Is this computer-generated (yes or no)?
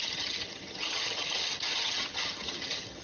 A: yes